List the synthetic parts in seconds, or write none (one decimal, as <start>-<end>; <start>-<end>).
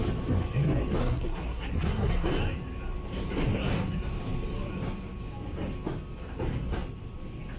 1.0-2.3